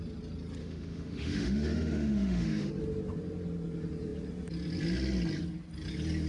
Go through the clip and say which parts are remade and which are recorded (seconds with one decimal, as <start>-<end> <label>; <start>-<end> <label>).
0.0-0.6 recorded; 0.6-2.7 remade; 2.7-6.3 recorded